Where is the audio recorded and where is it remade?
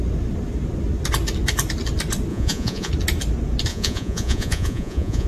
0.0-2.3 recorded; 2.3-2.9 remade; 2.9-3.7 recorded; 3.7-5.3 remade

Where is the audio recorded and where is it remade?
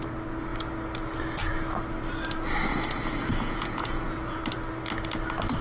0.0-2.7 recorded; 2.7-4.4 remade; 4.4-5.6 recorded